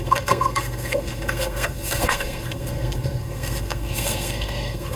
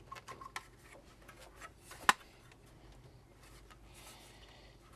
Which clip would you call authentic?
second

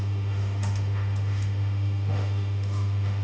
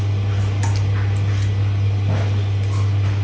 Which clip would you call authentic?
second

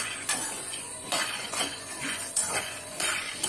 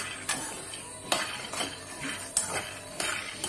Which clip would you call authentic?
second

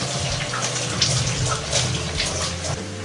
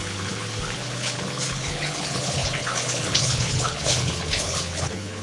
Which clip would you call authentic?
first